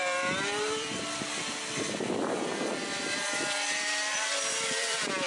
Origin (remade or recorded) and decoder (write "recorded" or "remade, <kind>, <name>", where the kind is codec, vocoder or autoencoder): remade, vocoder, BigVGAN v2